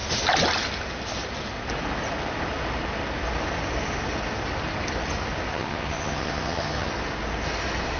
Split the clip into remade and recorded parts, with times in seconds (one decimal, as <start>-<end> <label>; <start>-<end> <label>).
0.0-5.5 recorded; 5.5-6.9 remade; 6.9-8.0 recorded

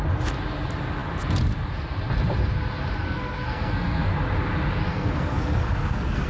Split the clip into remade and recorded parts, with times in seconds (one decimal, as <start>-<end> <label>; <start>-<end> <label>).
0.0-3.0 recorded; 3.0-4.1 remade; 4.1-4.9 recorded; 4.9-6.3 remade